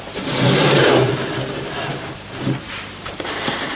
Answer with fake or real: fake